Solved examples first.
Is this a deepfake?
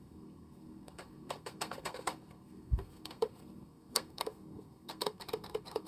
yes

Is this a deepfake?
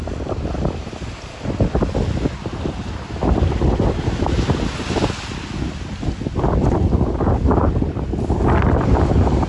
no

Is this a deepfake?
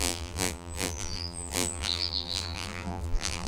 yes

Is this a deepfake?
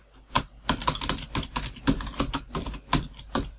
no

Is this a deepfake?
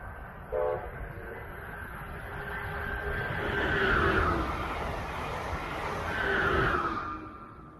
no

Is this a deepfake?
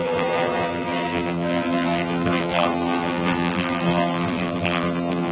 yes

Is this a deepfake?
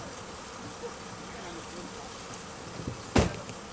no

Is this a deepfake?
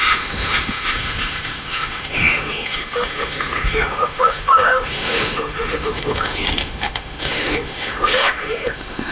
yes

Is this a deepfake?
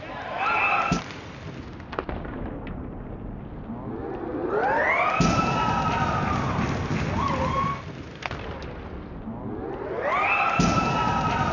no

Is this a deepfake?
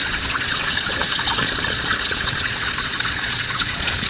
yes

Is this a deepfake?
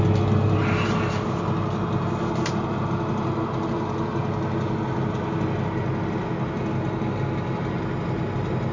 no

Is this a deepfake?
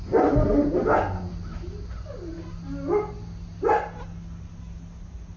no